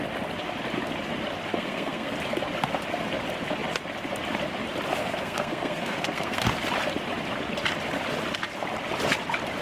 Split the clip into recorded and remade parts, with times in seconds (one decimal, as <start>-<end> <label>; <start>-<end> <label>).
0.0-1.5 recorded; 1.5-2.1 remade; 2.1-5.0 recorded; 5.0-6.4 remade; 6.4-9.6 recorded